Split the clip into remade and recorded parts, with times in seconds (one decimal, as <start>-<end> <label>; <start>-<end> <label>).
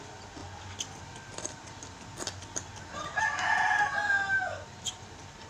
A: 0.0-5.5 recorded